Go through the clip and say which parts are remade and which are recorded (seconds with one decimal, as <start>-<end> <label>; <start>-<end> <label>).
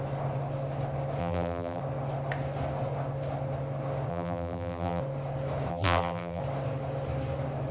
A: 0.0-1.2 recorded; 1.2-1.8 remade; 1.8-4.1 recorded; 4.1-5.0 remade; 5.0-5.7 recorded; 5.7-6.4 remade; 6.4-7.7 recorded